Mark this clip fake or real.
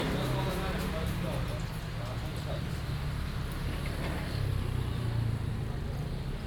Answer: real